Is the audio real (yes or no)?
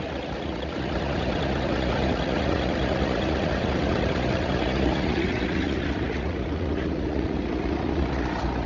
no